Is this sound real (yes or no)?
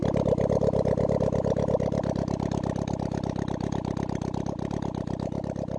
yes